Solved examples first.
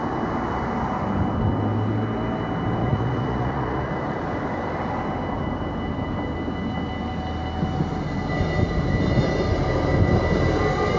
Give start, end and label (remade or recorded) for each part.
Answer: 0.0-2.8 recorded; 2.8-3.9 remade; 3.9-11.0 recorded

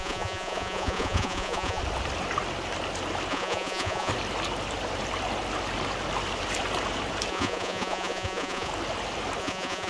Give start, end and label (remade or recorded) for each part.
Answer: 0.0-1.8 remade; 1.8-3.3 recorded; 3.3-4.1 remade; 4.1-7.3 recorded; 7.3-8.7 remade; 8.7-9.4 recorded; 9.4-9.9 remade

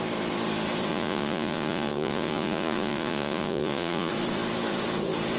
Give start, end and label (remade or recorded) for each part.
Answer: 0.0-0.9 recorded; 0.9-4.1 remade; 4.1-5.4 recorded